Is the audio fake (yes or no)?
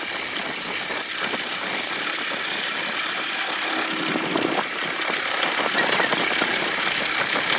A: no